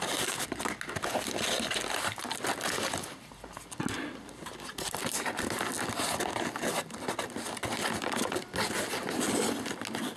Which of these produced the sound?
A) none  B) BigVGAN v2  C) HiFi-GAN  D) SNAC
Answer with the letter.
A